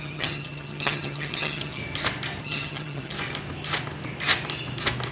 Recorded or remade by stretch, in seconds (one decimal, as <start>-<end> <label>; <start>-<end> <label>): 0.0-1.8 remade; 1.8-2.4 recorded; 2.4-3.1 remade; 3.1-5.1 recorded